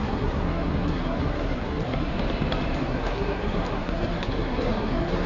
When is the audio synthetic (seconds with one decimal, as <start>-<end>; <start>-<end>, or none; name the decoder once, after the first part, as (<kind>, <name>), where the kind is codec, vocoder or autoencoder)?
0.0-2.1 (codec, SNAC); 2.8-5.3